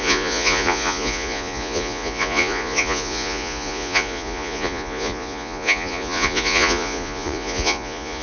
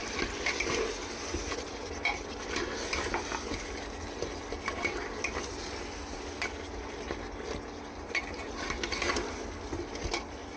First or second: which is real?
second